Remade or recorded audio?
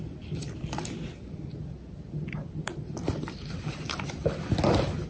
recorded